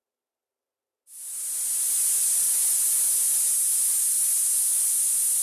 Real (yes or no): yes